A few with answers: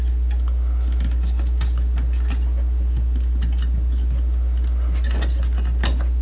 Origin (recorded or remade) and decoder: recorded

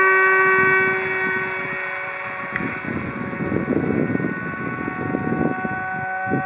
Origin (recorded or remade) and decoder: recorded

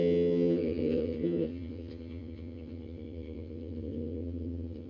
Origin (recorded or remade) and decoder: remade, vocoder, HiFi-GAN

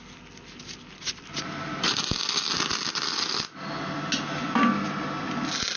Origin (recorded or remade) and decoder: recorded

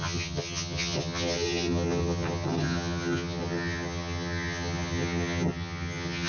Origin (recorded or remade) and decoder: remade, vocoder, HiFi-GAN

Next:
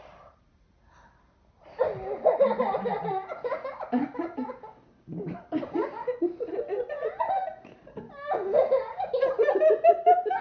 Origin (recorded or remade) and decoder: recorded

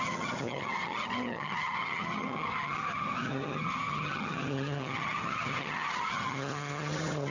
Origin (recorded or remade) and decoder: remade, vocoder, HiFi-GAN